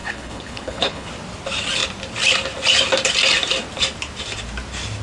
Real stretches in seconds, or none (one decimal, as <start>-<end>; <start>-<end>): 1.1-5.0

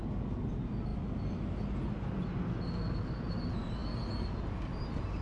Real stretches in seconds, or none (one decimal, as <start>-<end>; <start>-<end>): 0.0-5.2